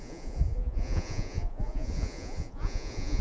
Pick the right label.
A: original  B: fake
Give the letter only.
B